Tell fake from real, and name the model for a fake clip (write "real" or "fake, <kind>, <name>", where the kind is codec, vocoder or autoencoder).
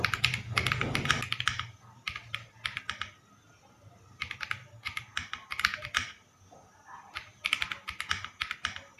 real